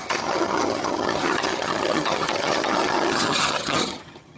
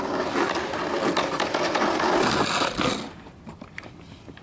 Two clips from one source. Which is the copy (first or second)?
first